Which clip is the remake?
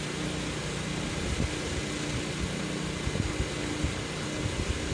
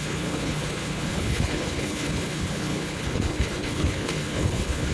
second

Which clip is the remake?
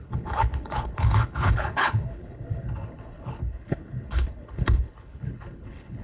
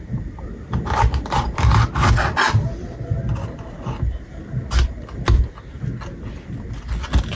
first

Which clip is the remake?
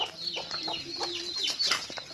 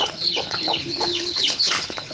second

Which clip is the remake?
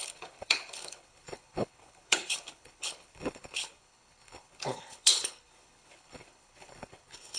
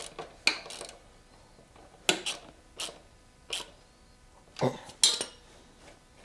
first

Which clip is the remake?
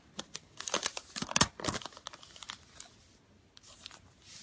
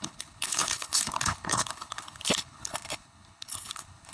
second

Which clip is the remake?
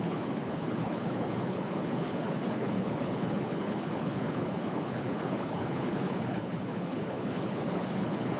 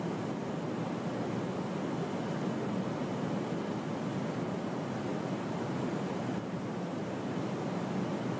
first